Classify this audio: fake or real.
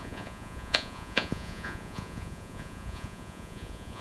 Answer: fake